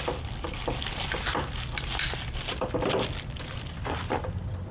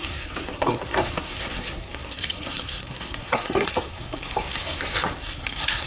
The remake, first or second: second